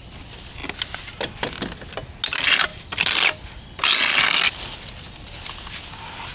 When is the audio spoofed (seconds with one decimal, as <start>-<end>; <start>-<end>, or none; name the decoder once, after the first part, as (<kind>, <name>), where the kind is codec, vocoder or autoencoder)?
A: none